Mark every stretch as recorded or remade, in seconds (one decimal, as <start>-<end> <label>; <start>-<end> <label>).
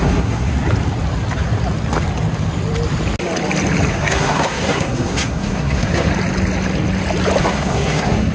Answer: 0.0-0.5 remade; 0.5-3.9 recorded; 3.9-6.1 remade; 6.1-7.4 recorded; 7.4-8.3 remade